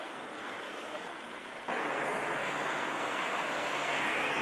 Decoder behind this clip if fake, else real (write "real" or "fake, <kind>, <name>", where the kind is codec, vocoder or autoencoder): fake, codec, SNAC